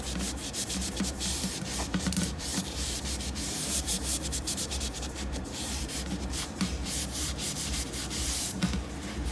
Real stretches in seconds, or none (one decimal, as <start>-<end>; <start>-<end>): none